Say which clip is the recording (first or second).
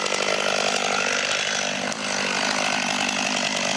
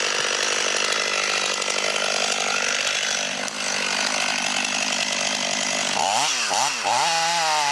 second